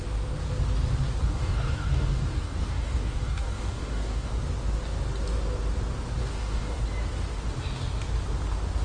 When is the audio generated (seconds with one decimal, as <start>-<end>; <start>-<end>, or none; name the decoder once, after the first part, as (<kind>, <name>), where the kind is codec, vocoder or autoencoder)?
1.2-4.4 (codec, DAC); 6.2-6.8